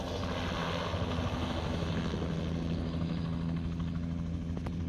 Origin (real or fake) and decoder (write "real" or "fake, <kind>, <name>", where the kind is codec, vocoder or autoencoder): real